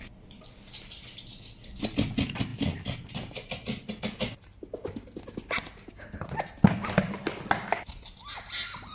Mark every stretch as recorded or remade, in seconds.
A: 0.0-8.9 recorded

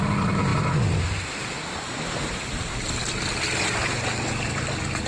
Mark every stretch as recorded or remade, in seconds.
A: 0.0-5.1 recorded

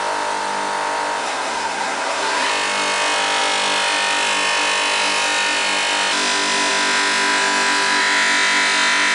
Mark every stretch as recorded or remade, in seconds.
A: 0.0-1.2 recorded; 1.2-2.5 remade; 2.5-9.1 recorded

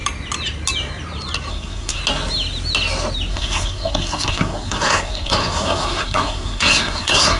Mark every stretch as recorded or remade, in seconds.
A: 0.0-1.5 recorded; 1.5-2.0 remade; 2.0-3.3 recorded; 3.3-7.4 remade

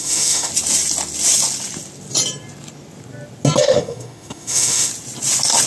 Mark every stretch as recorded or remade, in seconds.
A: 0.0-0.5 remade; 0.5-3.6 recorded; 3.6-4.9 remade; 4.9-5.7 recorded